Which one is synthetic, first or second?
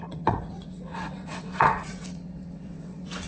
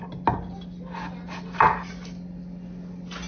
first